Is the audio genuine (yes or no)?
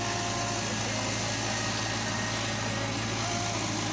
yes